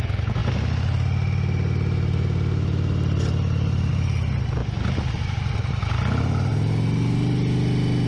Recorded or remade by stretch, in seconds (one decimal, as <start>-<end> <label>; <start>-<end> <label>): 0.0-8.1 recorded